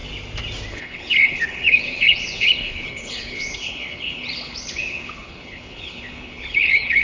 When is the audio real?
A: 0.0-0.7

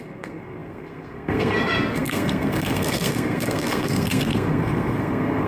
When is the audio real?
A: none

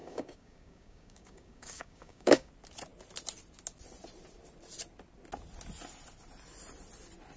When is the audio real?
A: 2.5-7.4

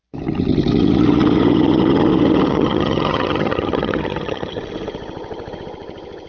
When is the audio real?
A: 0.0-2.5; 4.6-6.3

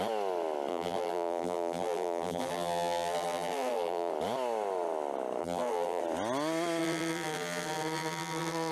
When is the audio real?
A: 0.0-0.7; 4.1-5.4; 6.0-6.8

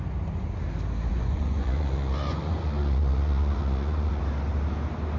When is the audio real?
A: 0.0-1.1; 4.2-5.2